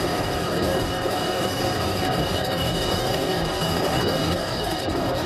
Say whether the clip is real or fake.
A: fake